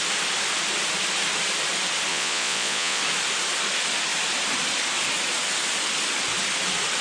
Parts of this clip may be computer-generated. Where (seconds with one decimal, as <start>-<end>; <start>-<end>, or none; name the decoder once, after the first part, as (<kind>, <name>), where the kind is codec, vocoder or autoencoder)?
2.1-3.0 (vocoder, Vocos)